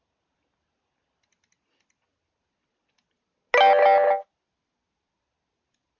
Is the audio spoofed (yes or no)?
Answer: no